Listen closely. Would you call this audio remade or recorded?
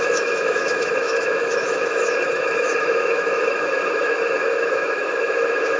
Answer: remade